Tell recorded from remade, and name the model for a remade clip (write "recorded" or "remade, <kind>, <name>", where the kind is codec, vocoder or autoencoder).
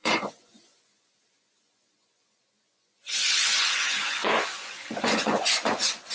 remade, vocoder, Vocos